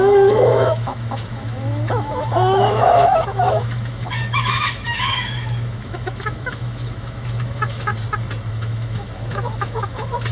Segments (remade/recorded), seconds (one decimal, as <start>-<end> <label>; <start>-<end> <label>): 0.0-7.9 remade; 7.9-8.5 recorded; 8.5-10.3 remade